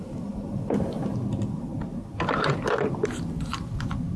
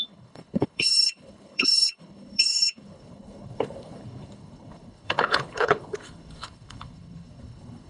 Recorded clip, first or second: first